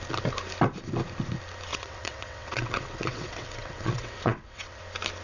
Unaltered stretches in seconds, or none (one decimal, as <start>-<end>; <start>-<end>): 0.0-1.7; 4.8-5.2